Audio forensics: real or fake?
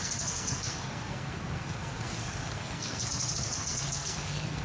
fake